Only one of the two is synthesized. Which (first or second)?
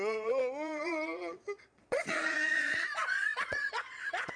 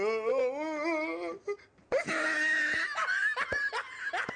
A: first